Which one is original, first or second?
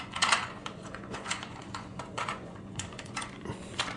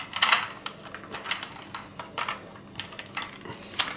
second